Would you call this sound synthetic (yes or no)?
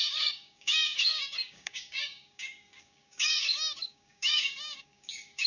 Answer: yes